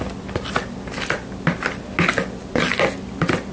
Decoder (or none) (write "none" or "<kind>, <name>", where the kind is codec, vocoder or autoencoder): none